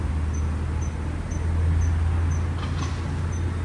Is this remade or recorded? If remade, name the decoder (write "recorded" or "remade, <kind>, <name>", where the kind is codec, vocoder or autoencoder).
recorded